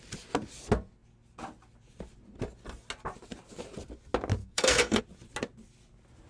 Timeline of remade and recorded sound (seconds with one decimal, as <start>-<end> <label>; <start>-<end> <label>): 0.0-4.4 recorded; 4.4-5.0 remade; 5.0-6.3 recorded